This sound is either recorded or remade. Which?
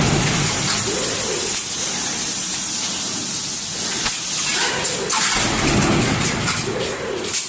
recorded